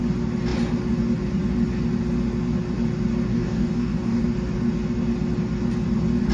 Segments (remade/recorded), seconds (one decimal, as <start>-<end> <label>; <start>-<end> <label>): 0.0-3.3 recorded; 3.3-4.2 remade; 4.2-6.3 recorded